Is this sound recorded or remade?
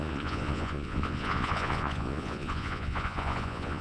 remade